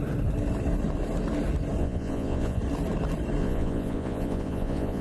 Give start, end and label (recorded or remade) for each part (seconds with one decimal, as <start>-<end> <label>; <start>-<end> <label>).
0.0-1.8 recorded; 1.8-2.6 remade; 2.6-3.4 recorded; 3.4-5.0 remade